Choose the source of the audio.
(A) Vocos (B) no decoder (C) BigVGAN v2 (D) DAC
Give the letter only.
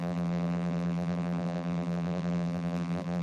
C